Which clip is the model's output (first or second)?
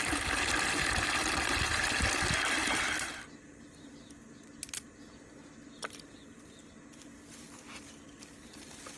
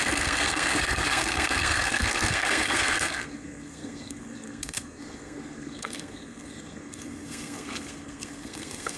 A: second